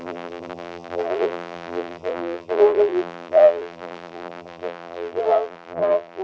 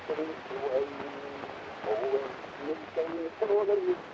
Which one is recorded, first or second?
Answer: second